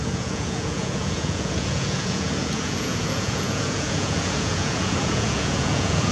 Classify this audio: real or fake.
fake